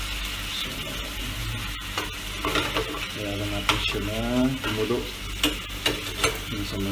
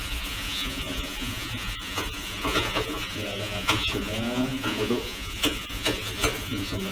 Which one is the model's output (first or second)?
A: second